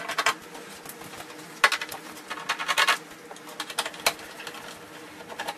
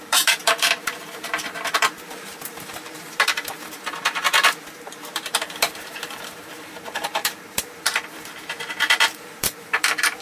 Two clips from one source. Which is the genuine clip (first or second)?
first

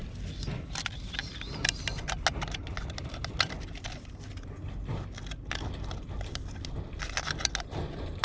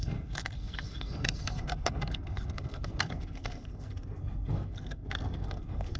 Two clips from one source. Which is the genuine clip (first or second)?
first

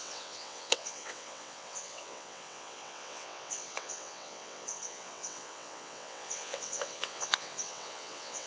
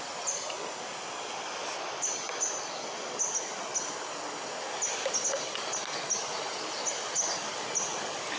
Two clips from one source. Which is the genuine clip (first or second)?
second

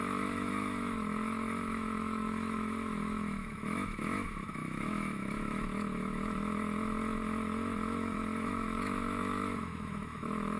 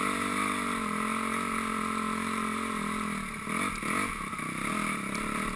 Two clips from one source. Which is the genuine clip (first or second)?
second